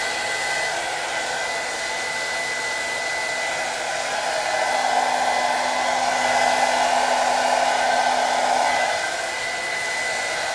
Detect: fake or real real